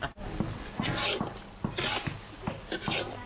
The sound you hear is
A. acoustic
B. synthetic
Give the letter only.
A